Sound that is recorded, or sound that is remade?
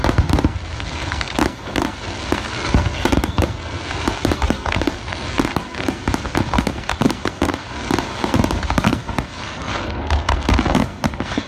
remade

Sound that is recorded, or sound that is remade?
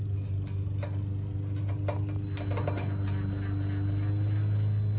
recorded